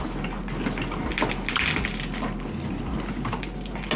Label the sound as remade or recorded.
recorded